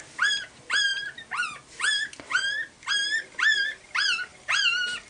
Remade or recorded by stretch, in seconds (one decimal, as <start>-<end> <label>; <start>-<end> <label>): 0.0-5.1 recorded